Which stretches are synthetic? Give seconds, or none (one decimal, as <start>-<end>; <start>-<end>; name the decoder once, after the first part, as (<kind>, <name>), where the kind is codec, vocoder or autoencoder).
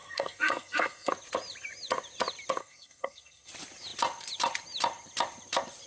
0.0-1.1 (codec, SNAC); 2.6-3.5